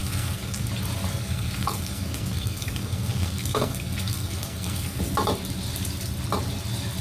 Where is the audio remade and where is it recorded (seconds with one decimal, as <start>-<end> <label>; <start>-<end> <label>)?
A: 0.0-0.7 remade; 0.7-1.1 recorded; 1.1-5.0 remade; 5.0-7.0 recorded

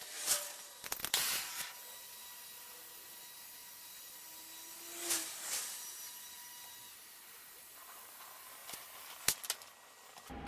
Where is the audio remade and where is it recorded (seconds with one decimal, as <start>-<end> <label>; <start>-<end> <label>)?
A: 0.0-10.5 recorded

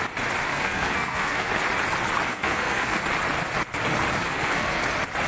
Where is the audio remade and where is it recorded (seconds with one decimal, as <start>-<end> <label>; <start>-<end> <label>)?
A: 0.0-0.5 recorded; 0.5-1.5 remade; 1.5-2.3 recorded; 2.3-3.0 remade; 3.0-4.2 recorded; 4.2-4.8 remade; 4.8-5.3 recorded

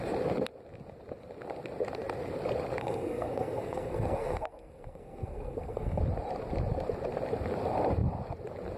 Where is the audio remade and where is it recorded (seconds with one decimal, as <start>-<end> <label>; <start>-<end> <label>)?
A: 0.0-2.8 recorded; 2.8-6.0 remade; 6.0-8.8 recorded

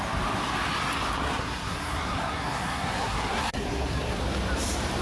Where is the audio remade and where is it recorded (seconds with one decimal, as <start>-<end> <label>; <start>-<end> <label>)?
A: 0.0-1.2 recorded; 1.2-4.2 remade; 4.2-5.0 recorded

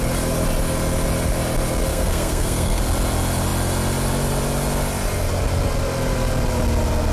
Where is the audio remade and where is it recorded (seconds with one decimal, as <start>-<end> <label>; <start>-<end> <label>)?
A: 0.0-1.9 recorded; 1.9-2.8 remade; 2.8-7.1 recorded

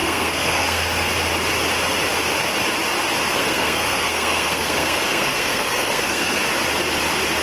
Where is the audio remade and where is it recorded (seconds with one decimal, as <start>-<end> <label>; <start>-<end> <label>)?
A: 0.0-1.1 remade; 1.1-3.3 recorded; 3.3-6.4 remade; 6.4-7.4 recorded

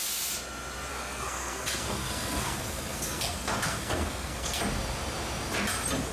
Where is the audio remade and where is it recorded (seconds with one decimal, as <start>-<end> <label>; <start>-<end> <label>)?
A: 0.0-0.9 recorded; 0.9-4.6 remade; 4.6-6.1 recorded